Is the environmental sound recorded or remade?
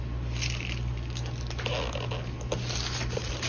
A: recorded